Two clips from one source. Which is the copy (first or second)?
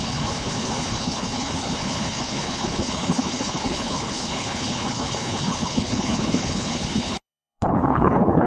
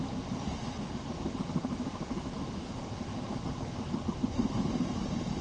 first